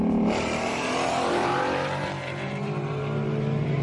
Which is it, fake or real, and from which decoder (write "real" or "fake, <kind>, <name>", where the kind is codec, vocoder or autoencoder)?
fake, vocoder, BigVGAN v2